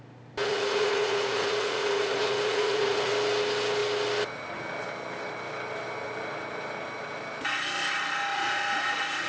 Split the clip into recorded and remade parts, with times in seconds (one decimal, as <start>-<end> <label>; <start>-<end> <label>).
0.0-0.4 recorded; 0.4-3.1 remade; 3.1-8.3 recorded; 8.3-9.3 remade